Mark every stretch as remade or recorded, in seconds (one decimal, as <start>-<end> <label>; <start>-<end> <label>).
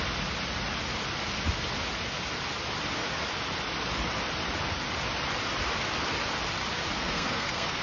0.0-7.0 recorded; 7.0-7.8 remade